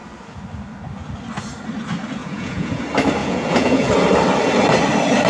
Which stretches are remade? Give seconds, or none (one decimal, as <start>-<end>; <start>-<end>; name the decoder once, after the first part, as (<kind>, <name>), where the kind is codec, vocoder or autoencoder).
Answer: 2.2-2.8 (vocoder, Vocos); 3.2-3.9